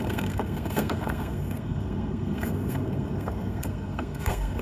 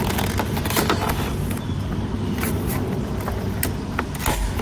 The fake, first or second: first